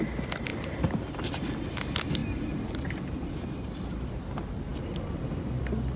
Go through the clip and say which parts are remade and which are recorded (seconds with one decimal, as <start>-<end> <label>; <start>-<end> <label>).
0.0-6.0 recorded

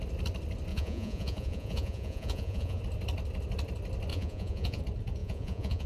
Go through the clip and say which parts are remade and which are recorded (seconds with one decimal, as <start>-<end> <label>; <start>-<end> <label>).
0.0-0.7 recorded; 0.7-2.8 remade; 2.8-4.1 recorded; 4.1-4.8 remade; 4.8-5.2 recorded; 5.2-5.9 remade

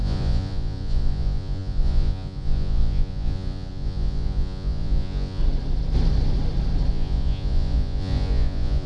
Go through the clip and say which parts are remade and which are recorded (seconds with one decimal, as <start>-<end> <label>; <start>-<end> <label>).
0.0-5.4 remade; 5.4-6.9 recorded; 6.9-8.9 remade

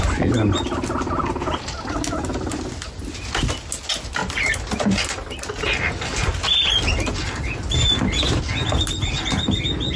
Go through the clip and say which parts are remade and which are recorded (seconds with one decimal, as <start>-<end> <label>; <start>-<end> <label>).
0.0-10.0 recorded

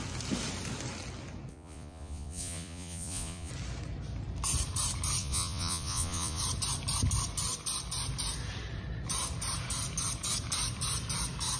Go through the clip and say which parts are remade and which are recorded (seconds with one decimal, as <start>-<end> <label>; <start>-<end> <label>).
0.0-1.5 recorded; 1.5-3.5 remade; 3.5-5.2 recorded; 5.2-6.4 remade; 6.4-11.6 recorded

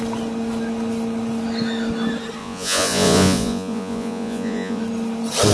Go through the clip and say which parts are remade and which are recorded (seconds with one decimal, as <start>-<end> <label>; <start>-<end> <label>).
0.0-2.4 recorded; 2.4-4.8 remade; 4.8-5.5 recorded

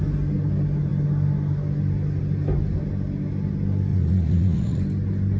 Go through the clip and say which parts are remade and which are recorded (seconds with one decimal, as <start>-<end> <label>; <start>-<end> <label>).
0.0-3.9 recorded; 3.9-4.8 remade; 4.8-5.4 recorded